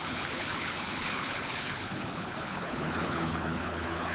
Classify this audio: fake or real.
fake